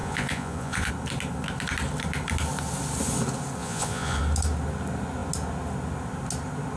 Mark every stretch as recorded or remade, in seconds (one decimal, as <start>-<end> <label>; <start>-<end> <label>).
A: 0.0-0.9 remade; 0.9-3.6 recorded; 3.6-4.2 remade; 4.2-6.8 recorded